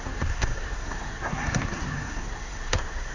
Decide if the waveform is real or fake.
fake